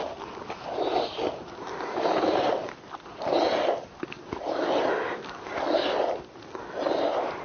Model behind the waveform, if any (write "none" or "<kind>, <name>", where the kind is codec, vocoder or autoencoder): none